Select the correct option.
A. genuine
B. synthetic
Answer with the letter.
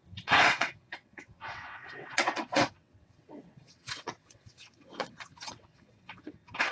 B